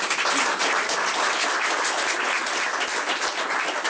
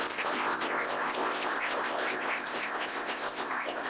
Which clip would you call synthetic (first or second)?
second